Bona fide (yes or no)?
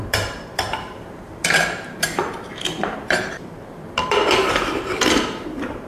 no